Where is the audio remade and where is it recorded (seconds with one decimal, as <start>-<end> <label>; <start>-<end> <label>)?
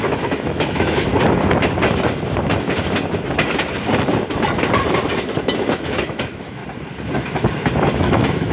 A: 0.0-1.1 remade; 1.1-5.4 recorded; 5.4-6.6 remade; 6.6-7.9 recorded; 7.9-8.5 remade